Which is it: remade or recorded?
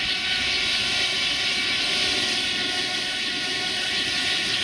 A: remade